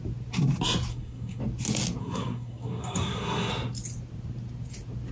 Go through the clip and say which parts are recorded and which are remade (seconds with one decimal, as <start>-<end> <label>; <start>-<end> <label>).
0.0-0.9 recorded; 0.9-1.4 remade; 1.4-2.0 recorded; 2.0-3.5 remade; 3.5-5.1 recorded